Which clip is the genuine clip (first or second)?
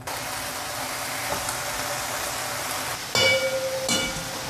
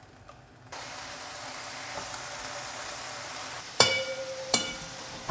first